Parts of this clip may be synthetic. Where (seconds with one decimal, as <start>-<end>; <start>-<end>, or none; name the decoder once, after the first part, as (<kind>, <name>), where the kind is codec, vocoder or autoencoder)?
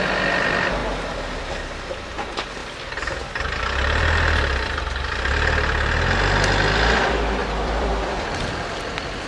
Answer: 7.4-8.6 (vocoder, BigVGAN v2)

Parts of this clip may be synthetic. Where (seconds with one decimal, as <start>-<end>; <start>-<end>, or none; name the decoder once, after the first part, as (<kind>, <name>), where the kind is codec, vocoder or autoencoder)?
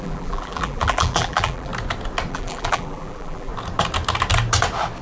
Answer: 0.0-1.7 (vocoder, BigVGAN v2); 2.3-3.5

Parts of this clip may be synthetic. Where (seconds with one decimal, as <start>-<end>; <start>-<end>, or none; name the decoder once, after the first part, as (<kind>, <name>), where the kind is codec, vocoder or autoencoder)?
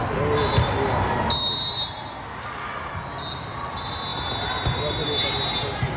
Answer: 4.1-5.5 (vocoder, BigVGAN v2)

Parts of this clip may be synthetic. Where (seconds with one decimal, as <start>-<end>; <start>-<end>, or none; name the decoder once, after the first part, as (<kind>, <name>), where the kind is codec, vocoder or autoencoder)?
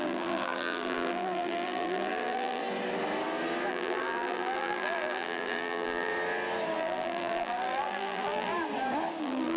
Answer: 0.0-2.6 (vocoder, BigVGAN v2); 3.7-6.1; 6.8-8.5; 9.2-9.6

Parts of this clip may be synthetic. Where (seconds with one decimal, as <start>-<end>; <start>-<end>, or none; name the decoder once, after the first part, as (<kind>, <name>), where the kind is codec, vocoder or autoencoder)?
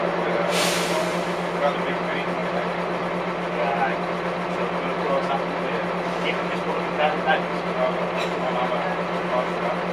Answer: none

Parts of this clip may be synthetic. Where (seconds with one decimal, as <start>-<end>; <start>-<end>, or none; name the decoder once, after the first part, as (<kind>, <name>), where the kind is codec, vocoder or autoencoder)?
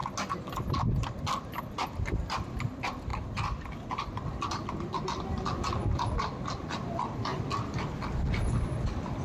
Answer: 7.3-7.8 (vocoder, BigVGAN v2)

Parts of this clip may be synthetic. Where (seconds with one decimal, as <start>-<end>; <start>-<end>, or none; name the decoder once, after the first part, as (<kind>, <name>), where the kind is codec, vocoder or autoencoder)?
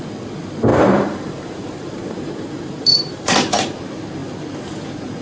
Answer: 0.7-3.8 (vocoder, BigVGAN v2)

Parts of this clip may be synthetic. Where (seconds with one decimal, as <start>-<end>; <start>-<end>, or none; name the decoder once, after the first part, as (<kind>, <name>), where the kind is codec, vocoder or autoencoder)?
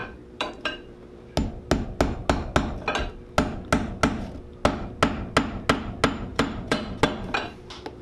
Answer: 0.0-1.3 (vocoder, BigVGAN v2); 6.3-6.8